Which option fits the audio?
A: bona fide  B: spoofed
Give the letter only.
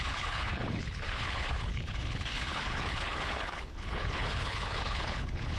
B